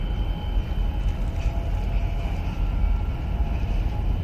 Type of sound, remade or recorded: recorded